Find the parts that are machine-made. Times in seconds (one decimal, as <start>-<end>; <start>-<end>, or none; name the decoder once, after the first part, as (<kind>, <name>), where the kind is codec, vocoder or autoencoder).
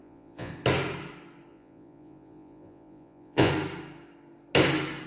0.0-0.5 (vocoder, Vocos); 1.5-3.5